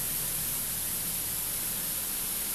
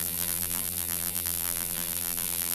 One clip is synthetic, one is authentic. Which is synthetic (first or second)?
second